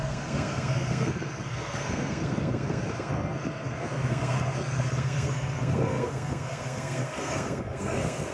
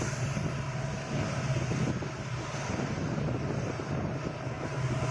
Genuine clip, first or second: second